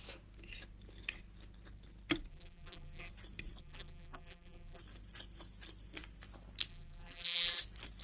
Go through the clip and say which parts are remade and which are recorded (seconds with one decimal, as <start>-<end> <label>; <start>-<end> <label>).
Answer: 0.0-2.3 recorded; 2.3-3.1 remade; 3.1-3.6 recorded; 3.6-4.8 remade; 4.8-6.7 recorded; 6.7-7.6 remade; 7.6-8.0 recorded

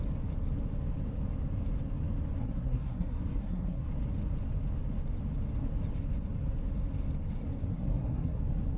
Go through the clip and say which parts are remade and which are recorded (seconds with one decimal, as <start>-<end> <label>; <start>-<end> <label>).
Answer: 0.0-2.4 recorded; 2.4-3.9 remade; 3.9-7.7 recorded; 7.7-8.4 remade; 8.4-8.8 recorded

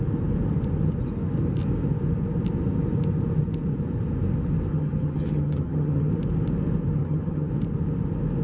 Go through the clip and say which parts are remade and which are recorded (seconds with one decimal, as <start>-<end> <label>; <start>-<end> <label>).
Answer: 0.0-4.7 recorded; 4.7-6.1 remade; 6.1-7.0 recorded; 7.0-7.5 remade; 7.5-8.4 recorded

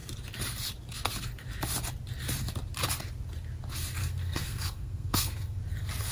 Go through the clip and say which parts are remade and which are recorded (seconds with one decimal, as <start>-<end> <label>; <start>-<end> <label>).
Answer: 0.0-4.0 recorded; 4.0-5.6 remade; 5.6-6.1 recorded

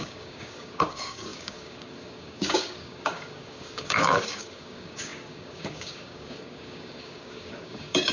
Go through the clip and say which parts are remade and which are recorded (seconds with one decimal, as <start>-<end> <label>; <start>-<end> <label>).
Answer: 0.0-8.1 remade

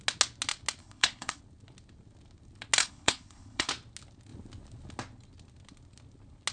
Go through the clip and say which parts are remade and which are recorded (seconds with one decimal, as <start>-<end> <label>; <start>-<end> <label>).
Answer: 0.0-0.8 recorded; 0.8-1.4 remade; 1.4-2.8 recorded; 2.8-3.7 remade; 3.7-6.5 recorded

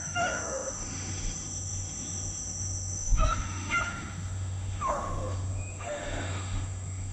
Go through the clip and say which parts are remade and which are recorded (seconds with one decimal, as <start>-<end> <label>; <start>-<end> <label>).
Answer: 0.0-7.1 remade

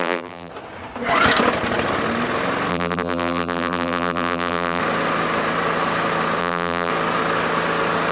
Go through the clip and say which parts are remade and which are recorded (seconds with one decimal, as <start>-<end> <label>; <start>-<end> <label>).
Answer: 0.0-0.5 remade; 0.5-2.7 recorded; 2.7-4.8 remade; 4.8-6.4 recorded; 6.4-6.9 remade; 6.9-8.1 recorded